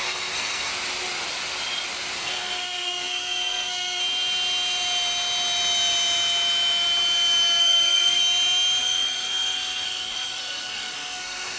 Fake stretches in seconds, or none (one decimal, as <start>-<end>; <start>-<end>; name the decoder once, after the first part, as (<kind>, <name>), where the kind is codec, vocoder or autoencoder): 0.0-0.7 (codec, SNAC); 2.2-4.0; 7.6-8.2; 8.8-11.6